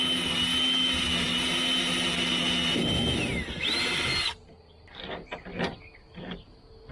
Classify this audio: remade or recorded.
recorded